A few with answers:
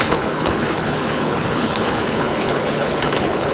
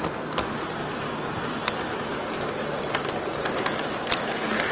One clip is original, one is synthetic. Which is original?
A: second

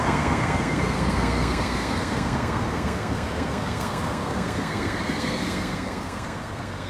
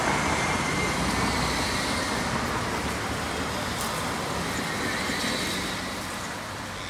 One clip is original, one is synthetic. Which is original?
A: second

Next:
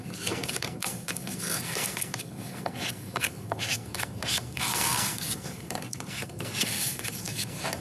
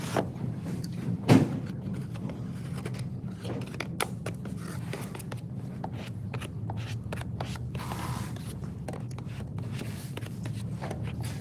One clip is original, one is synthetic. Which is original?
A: second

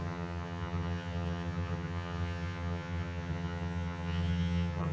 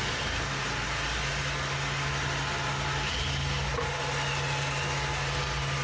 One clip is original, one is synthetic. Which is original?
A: second